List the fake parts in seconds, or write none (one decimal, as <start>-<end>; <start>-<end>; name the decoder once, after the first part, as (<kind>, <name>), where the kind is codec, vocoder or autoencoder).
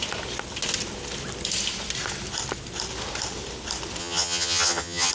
4.0-5.1 (vocoder, HiFi-GAN)